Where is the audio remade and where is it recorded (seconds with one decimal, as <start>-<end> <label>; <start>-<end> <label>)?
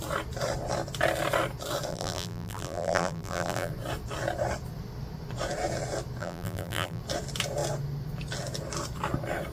0.0-1.9 recorded; 1.9-3.7 remade; 3.7-6.2 recorded; 6.2-7.0 remade; 7.0-9.5 recorded